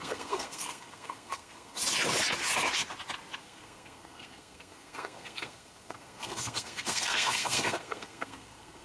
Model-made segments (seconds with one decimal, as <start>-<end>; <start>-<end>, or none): 0.0-1.8; 3.4-8.8

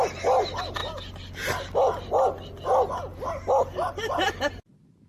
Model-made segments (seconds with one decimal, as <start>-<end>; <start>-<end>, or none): none

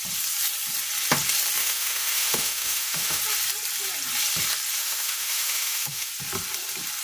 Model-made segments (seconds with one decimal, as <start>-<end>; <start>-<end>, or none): 1.6-3.2; 4.8-6.1

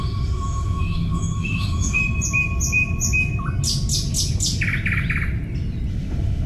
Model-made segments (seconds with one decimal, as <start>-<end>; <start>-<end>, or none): 0.0-2.0; 5.9-6.5

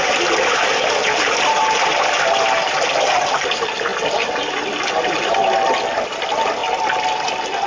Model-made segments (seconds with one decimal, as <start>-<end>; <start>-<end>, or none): none

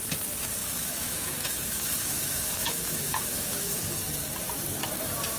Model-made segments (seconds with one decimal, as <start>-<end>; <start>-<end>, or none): 0.6-3.8